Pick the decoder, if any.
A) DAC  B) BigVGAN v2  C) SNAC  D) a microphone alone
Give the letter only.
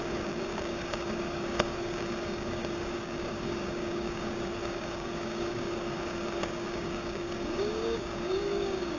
A